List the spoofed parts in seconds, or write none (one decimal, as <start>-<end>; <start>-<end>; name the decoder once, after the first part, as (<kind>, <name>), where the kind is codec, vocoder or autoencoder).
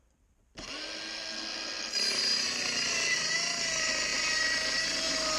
none